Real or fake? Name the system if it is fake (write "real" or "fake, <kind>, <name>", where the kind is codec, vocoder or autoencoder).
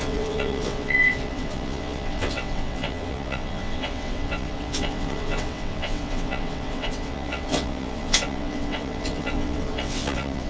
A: fake, vocoder, WaveNeXt